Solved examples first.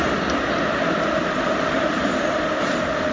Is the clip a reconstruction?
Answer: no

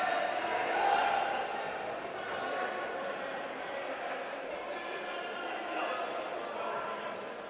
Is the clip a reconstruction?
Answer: no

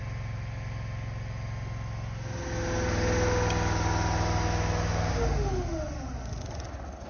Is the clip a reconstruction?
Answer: no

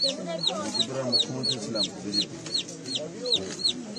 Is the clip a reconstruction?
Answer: no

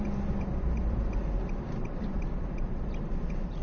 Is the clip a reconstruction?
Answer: yes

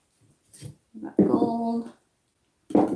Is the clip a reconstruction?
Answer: no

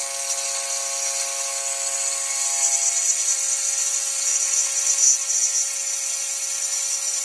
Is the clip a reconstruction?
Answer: no